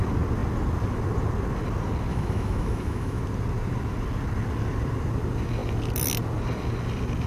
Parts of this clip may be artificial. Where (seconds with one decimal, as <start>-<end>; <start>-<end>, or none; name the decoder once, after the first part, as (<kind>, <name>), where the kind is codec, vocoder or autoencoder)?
2.1-3.2 (autoencoder, DAC-VAE)